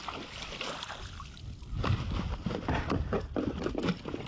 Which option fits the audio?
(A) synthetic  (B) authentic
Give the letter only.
B